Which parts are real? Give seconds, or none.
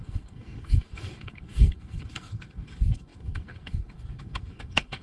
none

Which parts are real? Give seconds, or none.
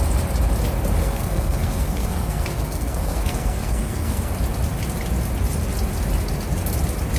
0.0-1.0; 4.3-7.2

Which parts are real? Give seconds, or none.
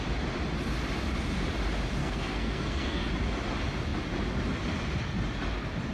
0.0-2.0; 3.1-5.9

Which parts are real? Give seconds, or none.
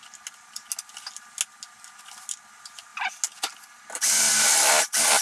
0.0-5.2